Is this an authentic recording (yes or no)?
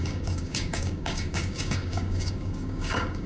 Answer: no